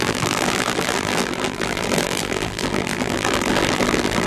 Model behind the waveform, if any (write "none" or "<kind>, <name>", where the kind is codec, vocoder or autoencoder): vocoder, BigVGAN v2